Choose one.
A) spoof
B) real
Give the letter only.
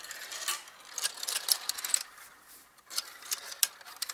A